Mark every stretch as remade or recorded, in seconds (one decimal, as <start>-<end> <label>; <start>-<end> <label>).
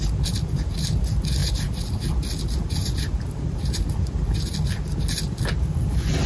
0.0-6.3 recorded